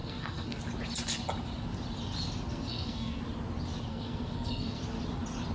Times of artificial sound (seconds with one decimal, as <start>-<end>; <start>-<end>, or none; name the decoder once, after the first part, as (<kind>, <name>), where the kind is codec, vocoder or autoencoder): 0.0-0.6 (codec, SNAC); 2.5-3.2; 3.9-4.8